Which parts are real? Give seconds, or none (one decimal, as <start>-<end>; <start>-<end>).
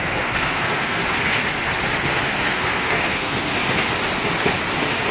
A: 1.0-2.1; 3.6-5.1